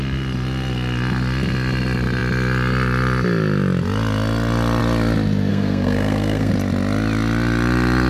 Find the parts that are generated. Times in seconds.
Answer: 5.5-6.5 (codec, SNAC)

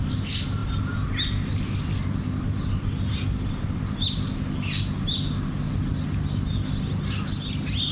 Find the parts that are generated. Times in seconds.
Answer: none

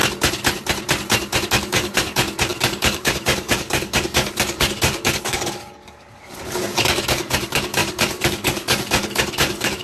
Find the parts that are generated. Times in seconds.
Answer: 1.5-9.8 (codec, DAC)

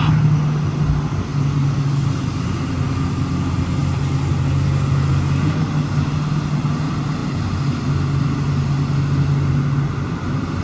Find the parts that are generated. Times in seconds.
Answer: none